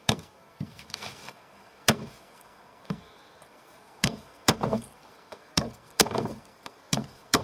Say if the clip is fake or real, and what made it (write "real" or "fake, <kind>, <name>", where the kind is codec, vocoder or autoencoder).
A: fake, codec, SNAC